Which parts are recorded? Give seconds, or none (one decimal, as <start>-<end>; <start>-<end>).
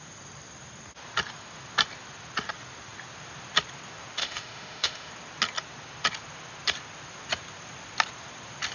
0.0-4.2; 5.1-8.7